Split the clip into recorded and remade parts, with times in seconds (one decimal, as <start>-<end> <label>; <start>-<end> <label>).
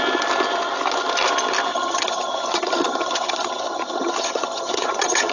0.0-1.7 recorded; 1.7-5.3 remade